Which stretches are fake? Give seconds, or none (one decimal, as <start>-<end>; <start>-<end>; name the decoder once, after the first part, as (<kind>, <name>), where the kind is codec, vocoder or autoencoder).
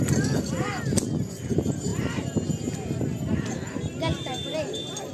none